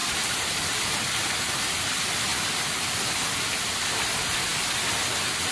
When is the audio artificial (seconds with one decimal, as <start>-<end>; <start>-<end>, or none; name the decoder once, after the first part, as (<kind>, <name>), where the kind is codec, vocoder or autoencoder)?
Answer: none